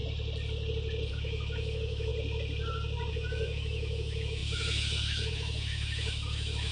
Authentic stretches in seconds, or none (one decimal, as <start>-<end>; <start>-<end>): 0.0-1.1; 2.1-3.1